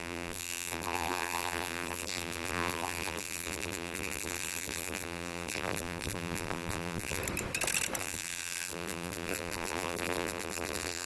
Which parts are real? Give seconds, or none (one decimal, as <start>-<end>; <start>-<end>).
7.2-8.0